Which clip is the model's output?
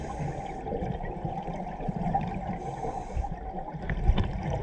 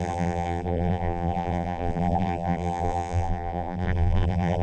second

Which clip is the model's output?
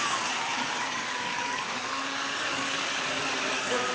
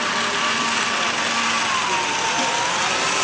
first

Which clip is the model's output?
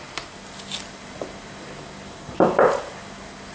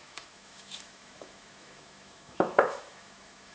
second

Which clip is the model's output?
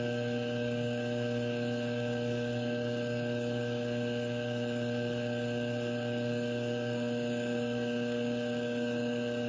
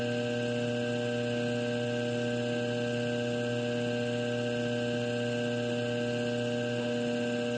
first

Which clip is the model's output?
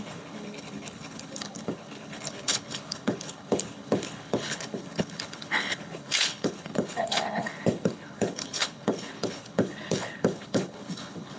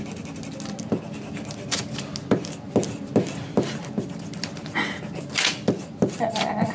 first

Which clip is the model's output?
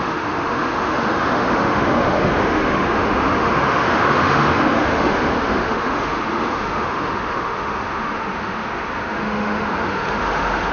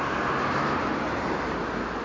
first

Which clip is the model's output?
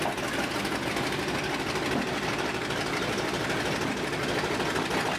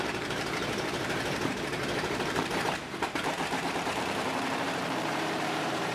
second